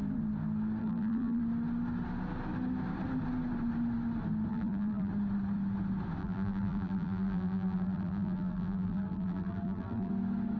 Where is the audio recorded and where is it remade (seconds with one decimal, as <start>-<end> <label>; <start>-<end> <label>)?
0.0-0.8 recorded; 0.8-1.4 remade; 1.4-4.5 recorded; 4.5-5.1 remade; 5.1-6.2 recorded; 6.2-10.1 remade; 10.1-10.6 recorded